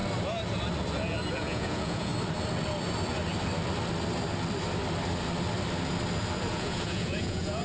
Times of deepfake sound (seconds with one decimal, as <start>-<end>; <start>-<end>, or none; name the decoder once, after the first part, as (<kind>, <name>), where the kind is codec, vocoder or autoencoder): 1.3-2.1 (vocoder, Vocos); 6.5-7.6

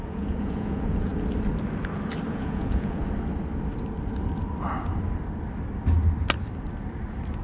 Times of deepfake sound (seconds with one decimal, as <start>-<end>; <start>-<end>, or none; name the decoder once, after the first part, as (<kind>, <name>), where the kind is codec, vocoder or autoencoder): 0.0-1.1 (vocoder, Vocos); 2.3-3.0

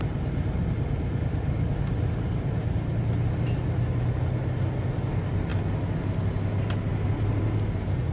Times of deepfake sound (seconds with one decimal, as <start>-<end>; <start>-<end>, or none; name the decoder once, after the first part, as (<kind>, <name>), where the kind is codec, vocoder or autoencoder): none

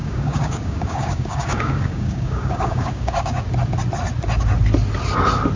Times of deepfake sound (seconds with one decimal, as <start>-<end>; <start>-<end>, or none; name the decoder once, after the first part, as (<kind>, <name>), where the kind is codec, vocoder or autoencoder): 0.0-3.4 (codec, DAC)